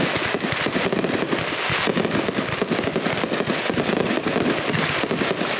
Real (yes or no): yes